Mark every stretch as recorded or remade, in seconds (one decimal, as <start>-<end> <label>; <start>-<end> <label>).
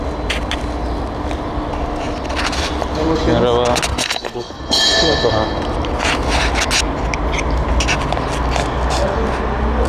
0.0-3.9 recorded; 3.9-4.6 remade; 4.6-9.9 recorded